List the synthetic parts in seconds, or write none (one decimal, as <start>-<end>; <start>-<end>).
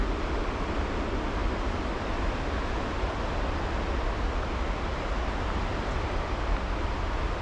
none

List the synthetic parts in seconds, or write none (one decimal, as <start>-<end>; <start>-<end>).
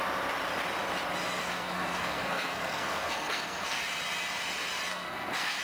1.4-3.8; 4.9-5.6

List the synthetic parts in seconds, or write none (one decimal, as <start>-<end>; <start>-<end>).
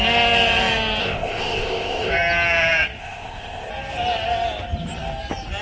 1.0-2.1; 3.0-3.7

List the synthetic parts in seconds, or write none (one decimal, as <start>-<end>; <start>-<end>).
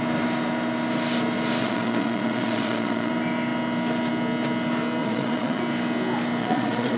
1.6-3.1; 5.0-5.6; 6.4-7.0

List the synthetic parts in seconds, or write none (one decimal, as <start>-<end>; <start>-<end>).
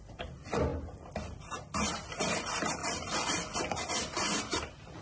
0.0-0.7; 2.1-5.0